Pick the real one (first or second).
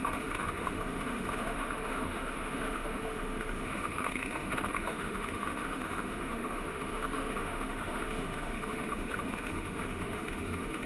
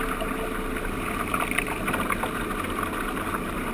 second